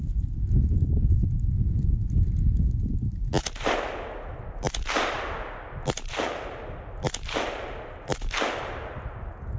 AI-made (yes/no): no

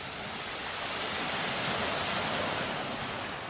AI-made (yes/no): no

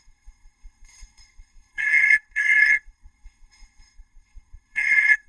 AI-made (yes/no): yes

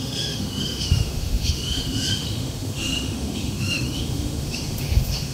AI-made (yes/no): yes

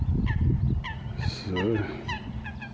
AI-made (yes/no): no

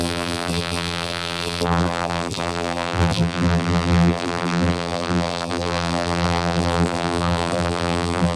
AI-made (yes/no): yes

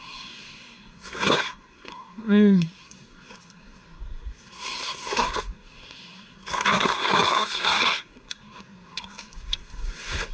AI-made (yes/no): yes